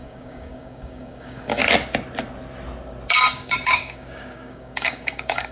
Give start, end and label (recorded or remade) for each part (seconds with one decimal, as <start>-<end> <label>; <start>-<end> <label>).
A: 0.0-1.6 remade; 1.6-3.1 recorded; 3.1-5.5 remade